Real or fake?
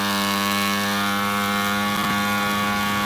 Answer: real